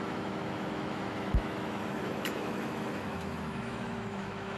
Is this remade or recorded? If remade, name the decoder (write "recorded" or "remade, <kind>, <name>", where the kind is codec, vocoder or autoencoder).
remade, autoencoder, DAC-VAE